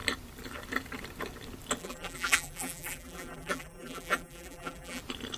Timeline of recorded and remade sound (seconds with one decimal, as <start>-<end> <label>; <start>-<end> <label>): 0.0-1.8 recorded; 1.8-5.0 remade; 5.0-5.4 recorded